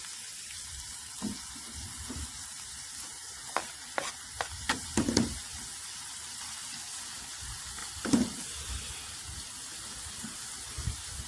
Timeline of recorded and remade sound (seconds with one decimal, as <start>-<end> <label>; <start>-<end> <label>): 0.0-11.3 recorded